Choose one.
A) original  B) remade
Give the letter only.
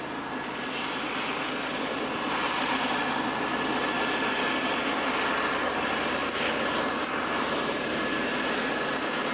A